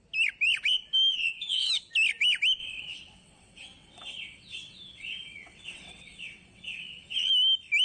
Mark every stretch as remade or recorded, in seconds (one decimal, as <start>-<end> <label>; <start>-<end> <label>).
0.0-1.1 recorded; 1.1-1.7 remade; 1.7-2.6 recorded; 2.6-7.3 remade; 7.3-7.8 recorded